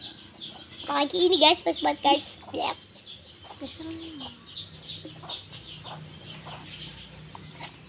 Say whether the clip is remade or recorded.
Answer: recorded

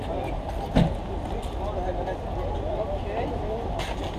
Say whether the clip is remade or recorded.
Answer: recorded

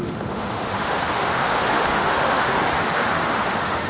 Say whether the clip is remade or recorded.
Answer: remade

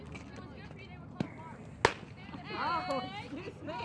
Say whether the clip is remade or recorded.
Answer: recorded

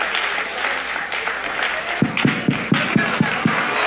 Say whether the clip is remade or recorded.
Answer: recorded